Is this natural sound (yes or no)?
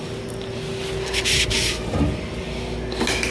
yes